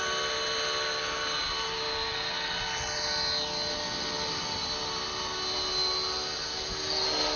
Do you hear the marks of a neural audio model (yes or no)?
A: no